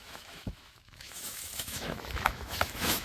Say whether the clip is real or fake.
fake